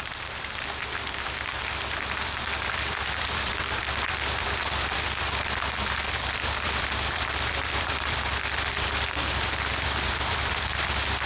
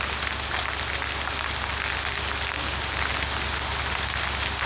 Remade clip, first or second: first